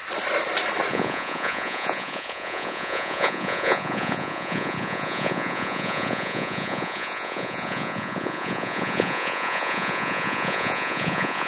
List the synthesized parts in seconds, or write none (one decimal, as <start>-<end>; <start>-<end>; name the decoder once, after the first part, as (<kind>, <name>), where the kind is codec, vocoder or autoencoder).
0.9-11.5 (vocoder, Vocos)